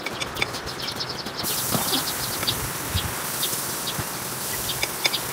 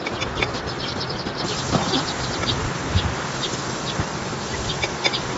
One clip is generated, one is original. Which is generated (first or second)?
second